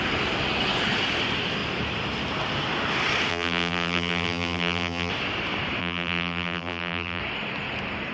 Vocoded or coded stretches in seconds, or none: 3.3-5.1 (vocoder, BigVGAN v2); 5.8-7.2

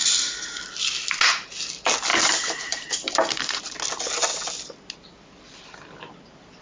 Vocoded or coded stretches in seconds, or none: 0.0-0.6 (vocoder, BigVGAN v2); 2.1-3.6

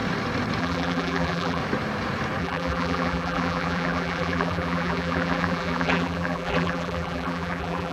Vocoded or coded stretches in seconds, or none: 0.6-1.6 (vocoder, BigVGAN v2); 2.4-7.9

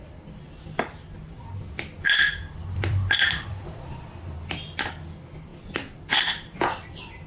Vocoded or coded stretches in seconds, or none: 2.9-3.5 (vocoder, BigVGAN v2)

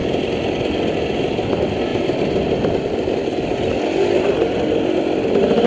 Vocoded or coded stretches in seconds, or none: 1.9-3.1 (vocoder, BigVGAN v2)

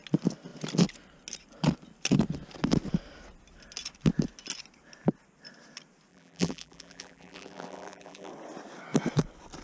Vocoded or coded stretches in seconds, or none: 6.1-8.3 (vocoder, BigVGAN v2)

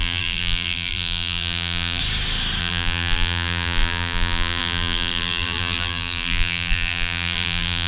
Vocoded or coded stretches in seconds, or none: 0.0-2.0 (vocoder, BigVGAN v2); 2.6-7.9